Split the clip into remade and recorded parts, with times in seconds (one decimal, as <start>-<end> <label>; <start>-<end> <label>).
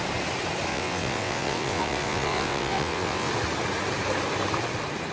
0.0-0.7 recorded; 0.7-3.3 remade; 3.3-5.1 recorded